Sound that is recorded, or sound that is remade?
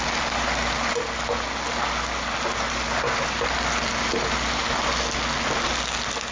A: recorded